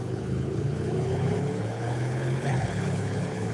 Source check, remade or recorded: remade